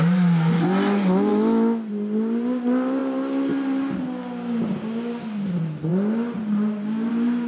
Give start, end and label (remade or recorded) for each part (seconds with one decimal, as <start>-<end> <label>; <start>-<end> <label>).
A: 0.0-7.5 recorded